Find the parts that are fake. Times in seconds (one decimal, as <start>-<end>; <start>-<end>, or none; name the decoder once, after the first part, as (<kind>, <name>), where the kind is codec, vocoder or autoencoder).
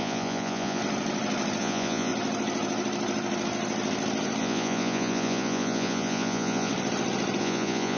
0.0-0.8 (vocoder, Vocos); 1.6-2.1; 4.4-6.7; 7.4-8.0